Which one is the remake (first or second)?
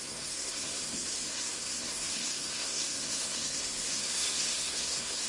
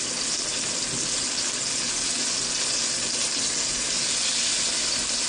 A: first